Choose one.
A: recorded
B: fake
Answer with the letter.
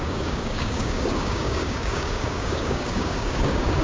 B